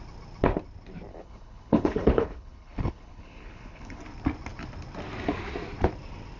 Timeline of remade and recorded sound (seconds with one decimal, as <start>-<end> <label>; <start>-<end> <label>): 0.0-1.1 recorded; 1.1-4.0 remade; 4.0-6.4 recorded